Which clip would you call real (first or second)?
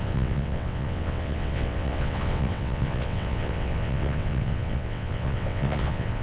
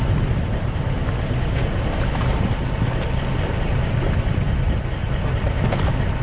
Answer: second